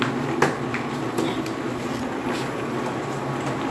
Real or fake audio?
real